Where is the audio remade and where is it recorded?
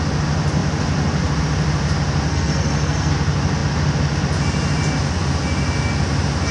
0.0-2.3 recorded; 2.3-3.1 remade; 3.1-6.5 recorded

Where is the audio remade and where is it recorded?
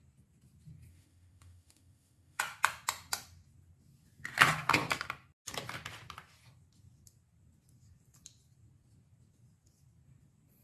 0.0-0.9 recorded; 0.9-2.4 remade; 2.4-10.6 recorded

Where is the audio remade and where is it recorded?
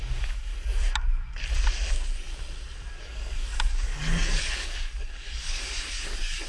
0.0-0.5 remade; 0.5-3.0 recorded; 3.0-6.5 remade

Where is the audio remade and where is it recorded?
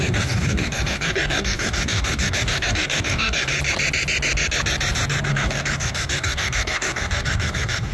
0.0-3.5 remade; 3.5-5.3 recorded; 5.3-7.9 remade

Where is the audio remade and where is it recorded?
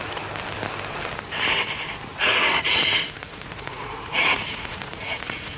0.0-2.1 recorded; 2.1-2.8 remade; 2.8-3.2 recorded; 3.2-5.6 remade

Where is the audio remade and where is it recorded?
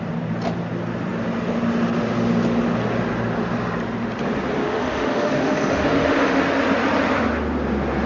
0.0-4.6 recorded; 4.6-6.4 remade; 6.4-8.1 recorded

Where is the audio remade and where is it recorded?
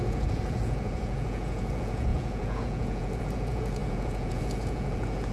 0.0-5.3 remade